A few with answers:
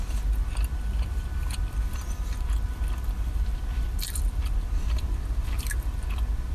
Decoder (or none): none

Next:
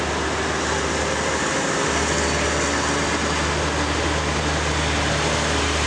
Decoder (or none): none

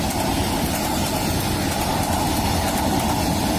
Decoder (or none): none